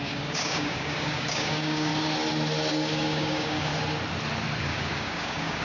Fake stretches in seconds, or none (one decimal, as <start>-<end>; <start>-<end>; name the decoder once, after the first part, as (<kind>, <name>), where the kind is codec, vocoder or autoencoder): 0.0-1.9 (codec, DAC); 2.7-3.7; 4.6-5.6